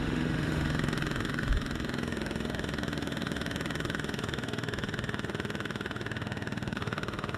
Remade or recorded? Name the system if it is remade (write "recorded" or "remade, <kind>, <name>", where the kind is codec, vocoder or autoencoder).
remade, autoencoder, DAC-VAE